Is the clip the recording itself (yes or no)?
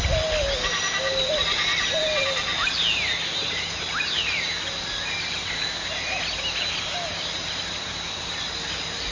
yes